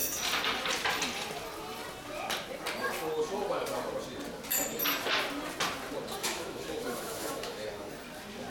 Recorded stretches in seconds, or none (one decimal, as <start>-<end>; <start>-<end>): 0.0-6.2; 7.9-8.5